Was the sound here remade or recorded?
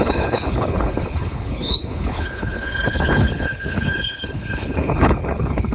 remade